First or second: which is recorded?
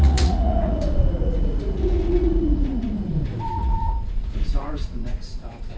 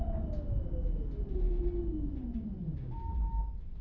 second